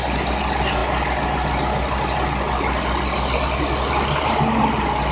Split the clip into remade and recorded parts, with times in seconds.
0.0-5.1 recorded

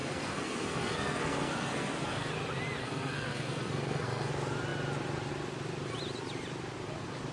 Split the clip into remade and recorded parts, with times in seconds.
0.0-2.3 remade; 2.3-2.8 recorded; 2.8-4.3 remade; 4.3-7.3 recorded

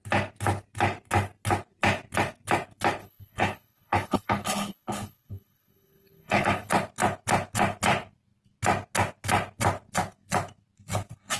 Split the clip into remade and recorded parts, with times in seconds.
0.0-3.0 recorded; 3.0-6.7 remade; 6.7-11.4 recorded

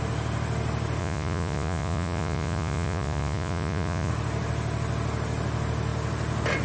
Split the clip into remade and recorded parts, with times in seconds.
0.0-1.0 recorded; 1.0-4.1 remade; 4.1-6.6 recorded

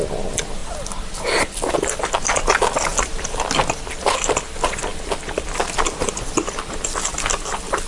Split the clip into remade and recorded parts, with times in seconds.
0.0-7.9 recorded

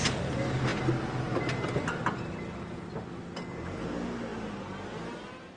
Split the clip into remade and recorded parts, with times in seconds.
0.0-5.6 recorded